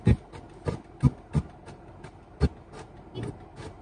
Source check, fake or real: real